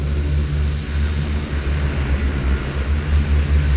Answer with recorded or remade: recorded